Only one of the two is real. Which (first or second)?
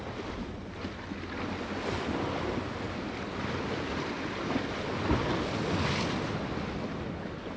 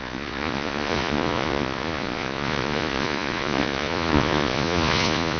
first